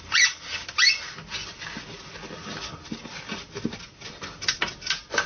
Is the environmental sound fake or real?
real